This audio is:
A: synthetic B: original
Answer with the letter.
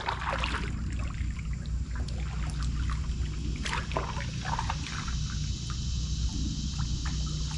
B